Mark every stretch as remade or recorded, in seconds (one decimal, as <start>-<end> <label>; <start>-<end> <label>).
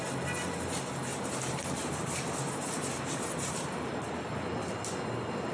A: 0.0-1.1 recorded; 1.1-3.9 remade; 3.9-5.5 recorded